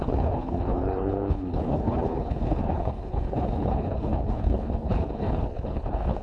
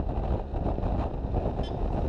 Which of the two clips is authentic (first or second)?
second